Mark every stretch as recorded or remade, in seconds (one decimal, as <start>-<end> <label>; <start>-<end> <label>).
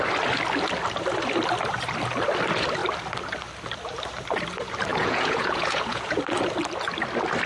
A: 0.0-4.9 recorded; 4.9-6.2 remade; 6.2-7.5 recorded